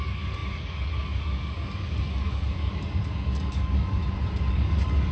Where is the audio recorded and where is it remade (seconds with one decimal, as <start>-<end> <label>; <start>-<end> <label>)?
0.0-4.0 remade; 4.0-4.5 recorded; 4.5-5.1 remade